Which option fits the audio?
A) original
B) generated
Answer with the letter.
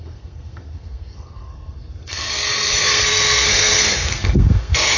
B